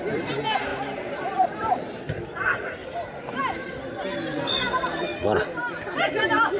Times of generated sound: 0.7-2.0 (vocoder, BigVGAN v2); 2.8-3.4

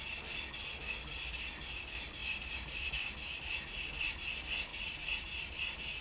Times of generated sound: 2.2-3.1 (vocoder, BigVGAN v2); 4.7-6.0